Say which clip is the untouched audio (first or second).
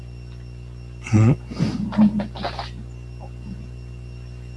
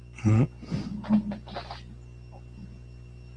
second